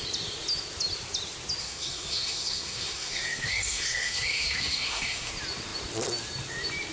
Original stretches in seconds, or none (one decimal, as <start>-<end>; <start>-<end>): 0.0-1.6; 5.3-6.9